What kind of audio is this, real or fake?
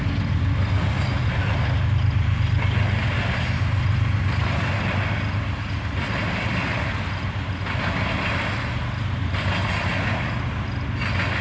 real